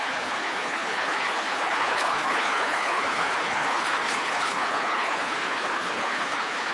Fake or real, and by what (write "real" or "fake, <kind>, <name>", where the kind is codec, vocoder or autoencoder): fake, codec, HILCodec